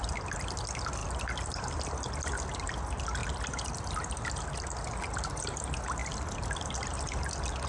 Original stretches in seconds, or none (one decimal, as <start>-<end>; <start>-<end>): 0.0-1.0; 1.8-6.0; 7.2-7.7